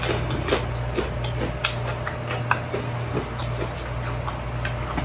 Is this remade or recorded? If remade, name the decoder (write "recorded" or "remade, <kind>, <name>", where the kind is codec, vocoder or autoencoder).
recorded